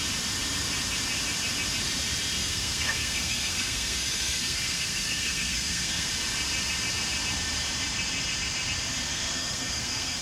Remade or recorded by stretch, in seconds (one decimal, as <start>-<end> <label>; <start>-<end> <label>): 0.0-2.4 recorded; 2.4-6.1 remade; 6.1-9.1 recorded; 9.1-10.2 remade